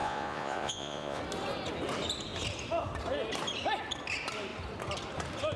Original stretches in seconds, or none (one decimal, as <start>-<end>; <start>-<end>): 1.2-5.6